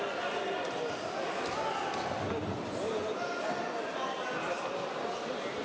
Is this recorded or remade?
recorded